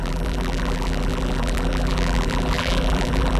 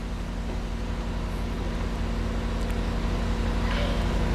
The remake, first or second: first